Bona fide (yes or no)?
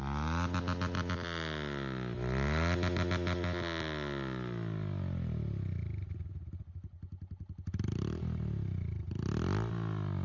yes